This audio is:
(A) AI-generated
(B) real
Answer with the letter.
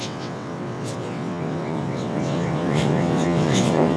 A